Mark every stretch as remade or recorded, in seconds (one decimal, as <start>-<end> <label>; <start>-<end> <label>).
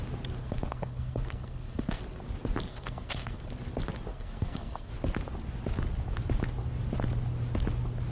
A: 0.0-0.4 recorded; 0.4-2.0 remade; 2.0-2.7 recorded; 2.7-3.5 remade; 3.5-4.1 recorded; 4.1-4.9 remade; 4.9-8.1 recorded